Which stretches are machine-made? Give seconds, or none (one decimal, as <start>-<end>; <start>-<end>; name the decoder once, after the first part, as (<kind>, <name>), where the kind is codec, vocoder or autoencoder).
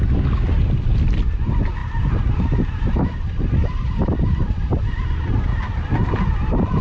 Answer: none